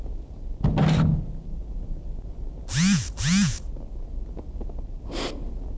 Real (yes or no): yes